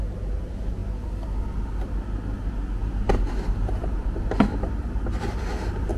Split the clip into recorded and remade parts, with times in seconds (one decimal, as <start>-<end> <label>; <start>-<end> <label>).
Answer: 0.0-6.0 recorded

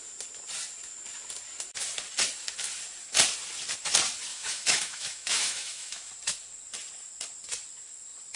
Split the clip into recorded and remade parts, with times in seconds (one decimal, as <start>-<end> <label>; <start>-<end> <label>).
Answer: 0.0-4.3 recorded; 4.3-6.1 remade; 6.1-8.4 recorded

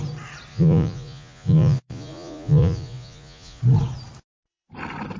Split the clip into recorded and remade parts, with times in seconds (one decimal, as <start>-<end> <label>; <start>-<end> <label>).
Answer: 0.0-0.5 recorded; 0.5-3.6 remade; 3.6-5.2 recorded

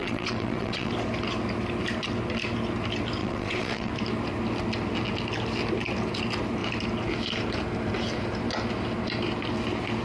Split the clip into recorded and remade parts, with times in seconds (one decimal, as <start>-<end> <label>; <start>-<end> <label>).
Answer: 0.0-0.9 remade; 0.9-3.2 recorded; 3.2-3.9 remade; 3.9-10.0 recorded

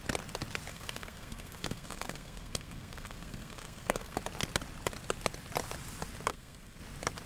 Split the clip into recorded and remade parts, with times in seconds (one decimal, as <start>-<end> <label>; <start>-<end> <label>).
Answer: 0.0-0.7 recorded; 0.7-4.2 remade; 4.2-6.3 recorded; 6.3-6.8 remade; 6.8-7.3 recorded

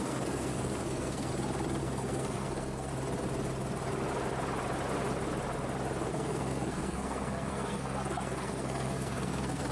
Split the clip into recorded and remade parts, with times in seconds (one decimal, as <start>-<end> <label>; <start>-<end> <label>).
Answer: 0.0-1.3 remade; 1.3-1.8 recorded; 1.8-2.9 remade; 2.9-6.1 recorded; 6.1-9.7 remade